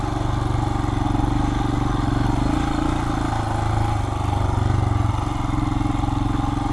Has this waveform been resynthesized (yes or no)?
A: no